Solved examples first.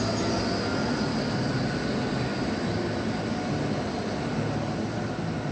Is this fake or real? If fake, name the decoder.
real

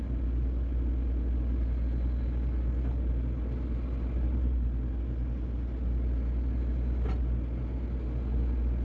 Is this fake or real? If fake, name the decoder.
real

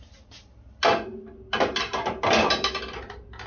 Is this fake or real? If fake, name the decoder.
real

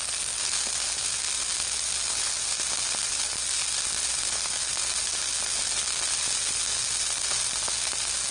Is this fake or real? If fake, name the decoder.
real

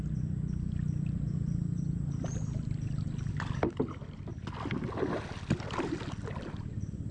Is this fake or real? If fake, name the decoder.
real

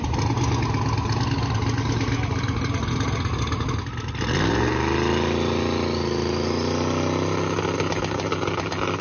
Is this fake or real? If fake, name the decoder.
real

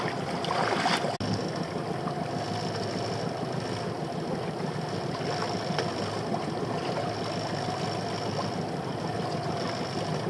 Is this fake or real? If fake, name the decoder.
real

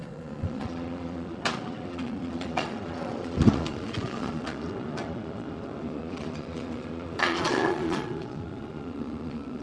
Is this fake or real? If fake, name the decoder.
fake, vocoder, Vocos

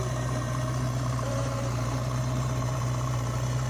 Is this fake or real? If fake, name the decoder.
fake, vocoder, BigVGAN v2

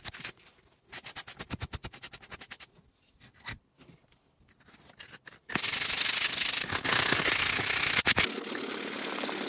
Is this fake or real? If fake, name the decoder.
real